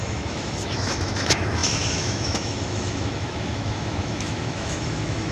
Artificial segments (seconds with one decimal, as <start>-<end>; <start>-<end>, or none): 0.0-5.3